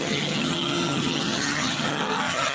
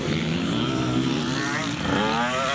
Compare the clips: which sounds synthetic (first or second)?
first